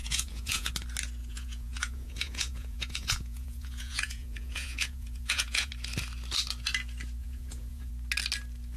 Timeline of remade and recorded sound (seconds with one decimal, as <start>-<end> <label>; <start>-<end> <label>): 0.0-0.7 remade; 0.7-1.2 recorded; 1.2-5.7 remade; 5.7-7.2 recorded; 7.2-7.9 remade; 7.9-8.8 recorded